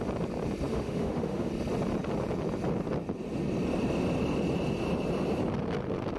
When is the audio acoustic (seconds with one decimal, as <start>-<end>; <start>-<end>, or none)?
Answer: 0.0-0.7; 1.5-6.2